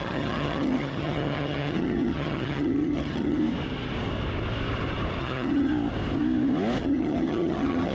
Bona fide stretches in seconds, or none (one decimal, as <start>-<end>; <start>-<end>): 3.4-5.2; 5.7-6.8

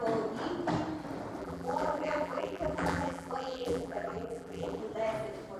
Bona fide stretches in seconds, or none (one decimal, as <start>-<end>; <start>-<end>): 0.0-1.4; 4.8-5.6

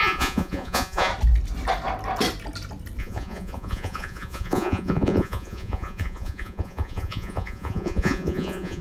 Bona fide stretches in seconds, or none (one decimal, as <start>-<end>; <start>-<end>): 1.1-3.0

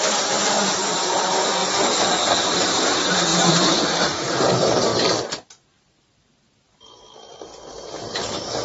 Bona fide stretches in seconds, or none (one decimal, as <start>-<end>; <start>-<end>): 1.6-2.4; 4.9-5.6

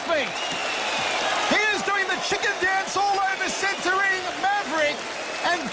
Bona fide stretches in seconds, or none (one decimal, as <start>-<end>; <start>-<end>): 0.0-5.7

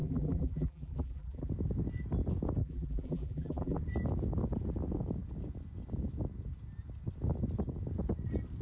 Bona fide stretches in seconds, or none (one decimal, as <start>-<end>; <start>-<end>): 1.5-2.6; 3.8-8.6

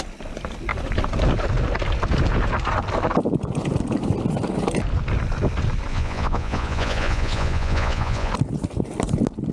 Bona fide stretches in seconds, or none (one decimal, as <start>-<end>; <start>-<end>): 0.0-5.9; 8.3-9.5

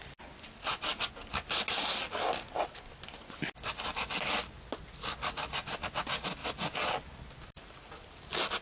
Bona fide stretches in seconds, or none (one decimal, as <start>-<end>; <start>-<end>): 0.0-8.6